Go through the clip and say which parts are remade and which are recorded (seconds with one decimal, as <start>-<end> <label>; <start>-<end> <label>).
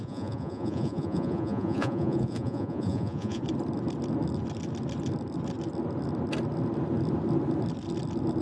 0.0-3.4 remade; 3.4-8.4 recorded